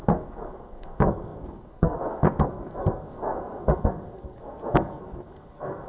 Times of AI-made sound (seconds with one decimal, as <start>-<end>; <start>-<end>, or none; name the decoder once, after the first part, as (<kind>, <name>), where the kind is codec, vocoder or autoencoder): 0.0-5.9 (codec, SNAC)